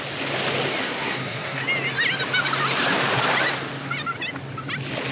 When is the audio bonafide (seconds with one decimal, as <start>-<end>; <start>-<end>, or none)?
0.0-0.8; 1.6-5.1